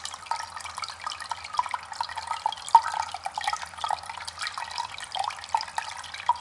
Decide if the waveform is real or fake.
real